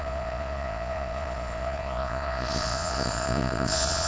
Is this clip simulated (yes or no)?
yes